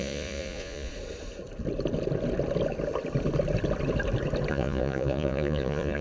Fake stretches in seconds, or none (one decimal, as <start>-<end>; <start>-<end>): 0.0-0.9; 4.5-6.0

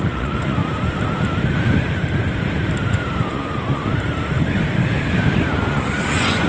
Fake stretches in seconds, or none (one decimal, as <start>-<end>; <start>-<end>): 0.0-0.6; 3.3-3.8; 5.7-6.5

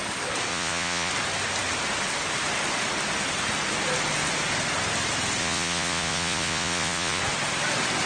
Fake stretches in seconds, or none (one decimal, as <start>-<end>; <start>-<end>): 0.5-1.1; 5.4-7.2

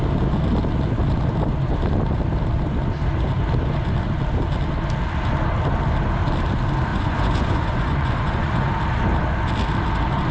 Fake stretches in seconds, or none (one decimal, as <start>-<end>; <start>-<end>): 6.9-8.7